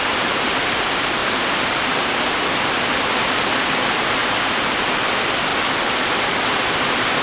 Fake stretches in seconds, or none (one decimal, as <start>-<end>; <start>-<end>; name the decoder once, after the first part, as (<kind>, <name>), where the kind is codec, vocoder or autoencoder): 0.0-4.2 (vocoder, BigVGAN v2); 5.0-5.5; 6.6-7.2